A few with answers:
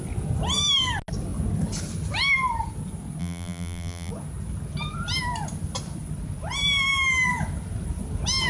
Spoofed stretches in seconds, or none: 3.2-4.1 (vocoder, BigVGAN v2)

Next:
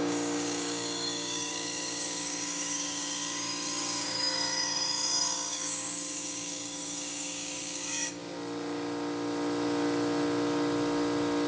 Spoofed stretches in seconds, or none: 0.0-8.2 (codec, DAC)

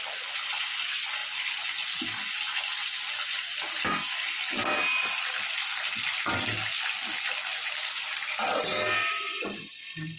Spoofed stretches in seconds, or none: none

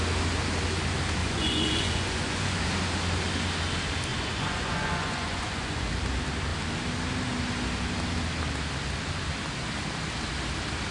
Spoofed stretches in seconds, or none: 1.2-2.6 (vocoder, Vocos); 4.1-5.9